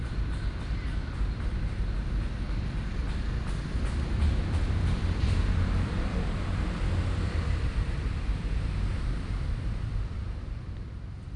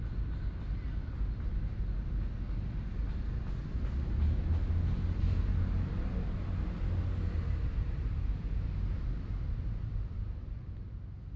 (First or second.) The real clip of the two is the second